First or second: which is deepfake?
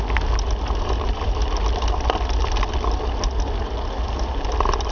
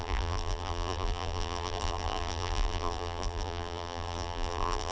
second